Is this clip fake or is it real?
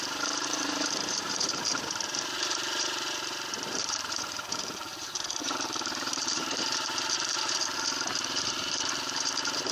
fake